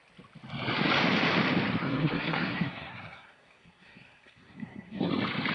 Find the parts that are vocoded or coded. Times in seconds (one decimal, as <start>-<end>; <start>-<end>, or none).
1.8-5.1